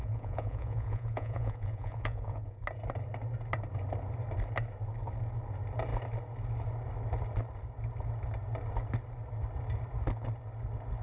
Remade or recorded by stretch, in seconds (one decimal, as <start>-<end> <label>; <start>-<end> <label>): 0.0-2.6 remade; 2.6-11.0 recorded